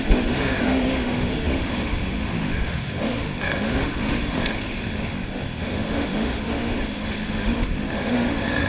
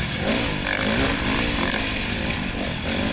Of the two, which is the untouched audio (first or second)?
second